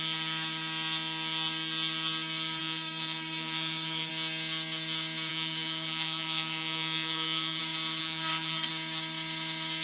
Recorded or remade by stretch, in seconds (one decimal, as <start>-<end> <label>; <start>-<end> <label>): 0.0-2.6 recorded; 2.6-4.1 remade; 4.1-5.3 recorded; 5.3-7.6 remade; 7.6-8.0 recorded; 8.0-8.7 remade; 8.7-9.8 recorded

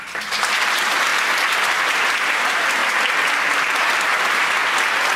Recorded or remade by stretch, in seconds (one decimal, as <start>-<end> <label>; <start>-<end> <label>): 0.0-1.1 remade; 1.1-1.7 recorded; 1.7-2.8 remade; 2.8-3.6 recorded; 3.6-4.6 remade; 4.6-5.2 recorded

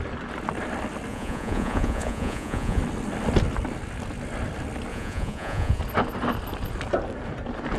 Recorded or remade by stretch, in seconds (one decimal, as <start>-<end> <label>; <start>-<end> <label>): 0.0-1.1 recorded; 1.1-2.8 remade; 2.8-4.9 recorded; 4.9-5.8 remade; 5.8-7.8 recorded

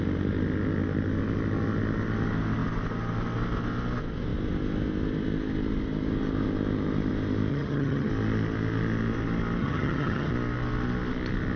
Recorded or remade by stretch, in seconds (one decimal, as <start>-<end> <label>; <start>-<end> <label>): 0.0-7.5 recorded; 7.5-8.1 remade; 8.1-9.6 recorded; 9.6-10.3 remade; 10.3-11.6 recorded

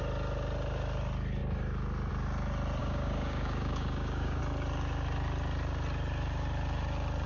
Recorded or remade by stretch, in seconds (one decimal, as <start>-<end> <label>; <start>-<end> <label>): 0.0-2.8 recorded; 2.8-4.4 remade; 4.4-7.3 recorded

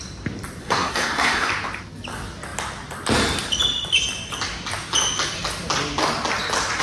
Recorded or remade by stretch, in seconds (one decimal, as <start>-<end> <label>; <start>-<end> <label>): 0.0-0.6 recorded; 0.6-1.5 remade; 1.5-6.8 recorded

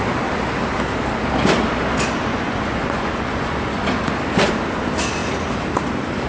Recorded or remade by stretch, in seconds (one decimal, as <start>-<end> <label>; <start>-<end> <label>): 0.0-2.3 recorded; 2.3-3.8 remade; 3.8-6.3 recorded

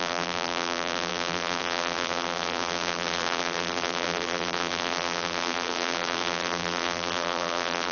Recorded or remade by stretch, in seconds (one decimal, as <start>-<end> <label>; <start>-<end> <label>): 0.0-7.9 remade